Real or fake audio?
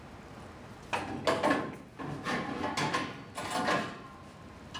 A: real